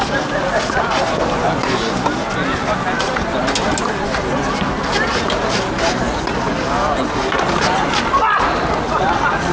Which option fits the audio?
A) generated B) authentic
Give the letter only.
B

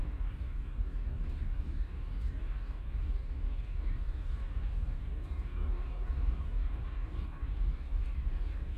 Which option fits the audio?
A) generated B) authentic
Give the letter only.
A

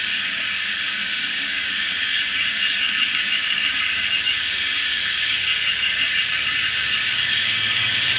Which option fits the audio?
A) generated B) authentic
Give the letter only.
A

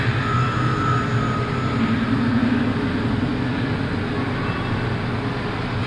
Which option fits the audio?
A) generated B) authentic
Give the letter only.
B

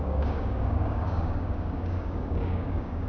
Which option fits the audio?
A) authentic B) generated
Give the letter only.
B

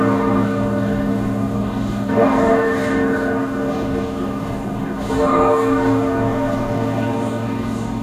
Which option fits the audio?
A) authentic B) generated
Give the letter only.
B